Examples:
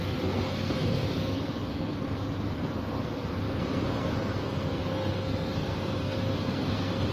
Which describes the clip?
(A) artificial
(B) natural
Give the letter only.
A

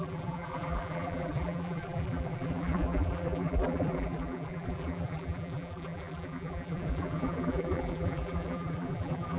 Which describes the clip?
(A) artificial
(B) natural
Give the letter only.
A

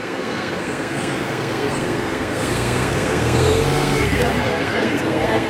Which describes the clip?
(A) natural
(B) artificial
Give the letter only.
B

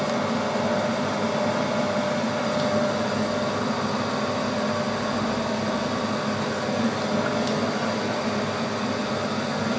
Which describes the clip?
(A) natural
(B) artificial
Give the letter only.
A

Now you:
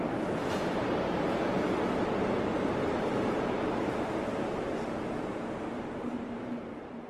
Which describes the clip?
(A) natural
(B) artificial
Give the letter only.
B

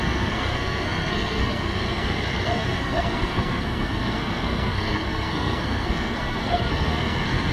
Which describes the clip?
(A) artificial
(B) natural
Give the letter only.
A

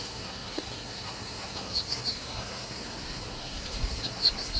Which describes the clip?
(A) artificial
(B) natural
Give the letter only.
A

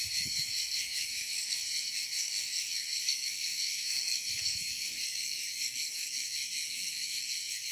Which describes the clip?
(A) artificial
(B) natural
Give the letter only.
A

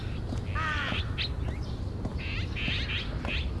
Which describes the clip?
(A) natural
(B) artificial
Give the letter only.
A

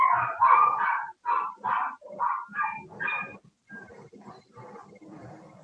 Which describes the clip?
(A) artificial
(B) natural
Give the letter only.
B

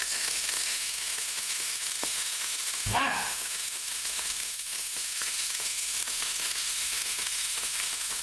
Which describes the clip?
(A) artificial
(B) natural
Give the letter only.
A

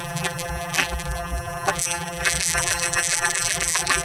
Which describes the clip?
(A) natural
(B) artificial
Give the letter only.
B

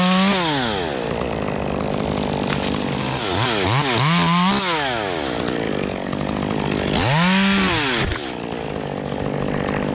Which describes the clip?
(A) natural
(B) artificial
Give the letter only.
A